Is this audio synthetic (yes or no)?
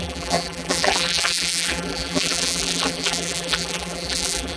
yes